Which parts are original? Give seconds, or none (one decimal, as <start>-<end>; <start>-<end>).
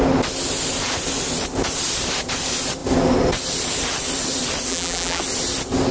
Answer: 0.0-4.7; 5.2-5.9